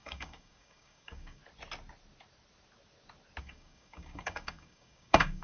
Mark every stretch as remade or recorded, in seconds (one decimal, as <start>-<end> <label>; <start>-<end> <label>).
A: 0.0-1.4 remade; 1.4-3.4 recorded; 3.4-5.4 remade